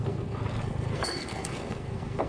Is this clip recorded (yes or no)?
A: no